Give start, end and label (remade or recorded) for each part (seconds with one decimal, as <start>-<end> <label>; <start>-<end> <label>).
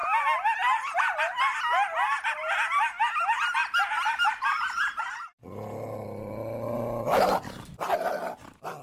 0.0-3.6 recorded; 3.6-4.3 remade; 4.3-8.8 recorded